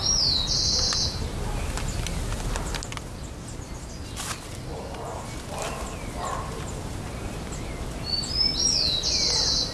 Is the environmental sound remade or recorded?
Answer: recorded